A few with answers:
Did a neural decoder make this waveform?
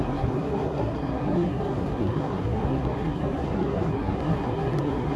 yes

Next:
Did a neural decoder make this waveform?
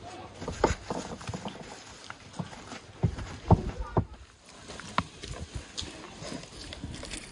no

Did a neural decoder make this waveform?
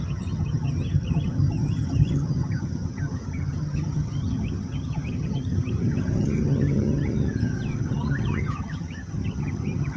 yes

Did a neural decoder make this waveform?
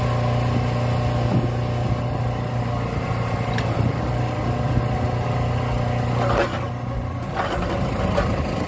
no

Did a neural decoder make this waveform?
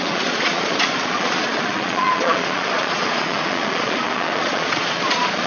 yes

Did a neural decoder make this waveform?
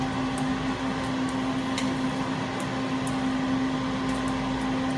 no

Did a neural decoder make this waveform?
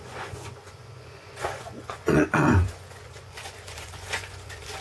yes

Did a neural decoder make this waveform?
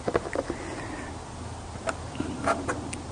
no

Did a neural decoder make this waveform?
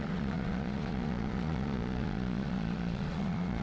yes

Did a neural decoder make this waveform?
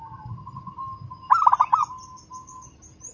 no